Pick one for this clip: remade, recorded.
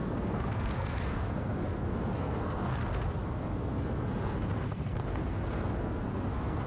remade